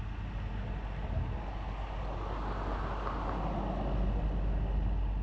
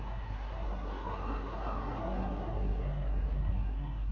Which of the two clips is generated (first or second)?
second